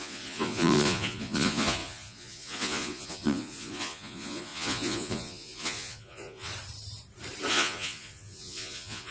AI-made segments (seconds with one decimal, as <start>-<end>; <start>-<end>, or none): 0.0-6.5; 7.5-9.1